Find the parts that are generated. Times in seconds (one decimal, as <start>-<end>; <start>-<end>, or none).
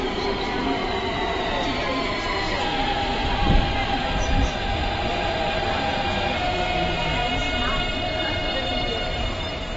0.8-1.7